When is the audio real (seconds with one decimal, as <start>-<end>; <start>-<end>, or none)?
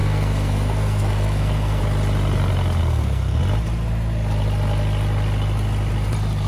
1.8-2.8; 3.4-6.5